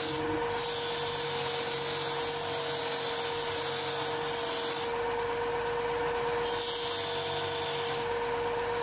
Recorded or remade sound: recorded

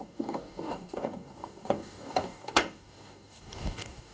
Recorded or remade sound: remade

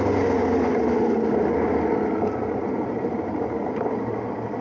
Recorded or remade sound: recorded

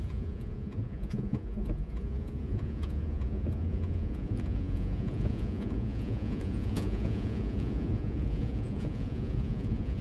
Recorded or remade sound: remade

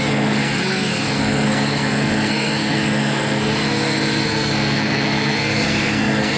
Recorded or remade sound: remade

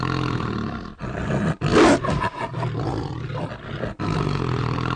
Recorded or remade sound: recorded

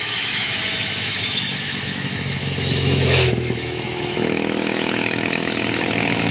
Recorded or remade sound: remade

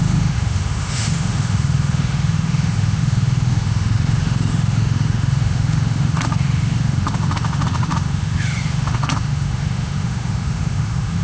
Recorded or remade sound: remade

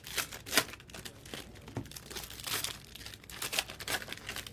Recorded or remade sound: recorded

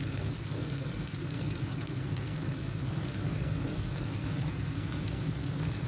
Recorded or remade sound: remade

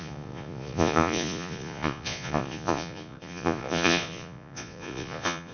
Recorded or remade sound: remade